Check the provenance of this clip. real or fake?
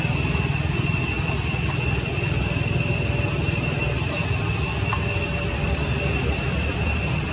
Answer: real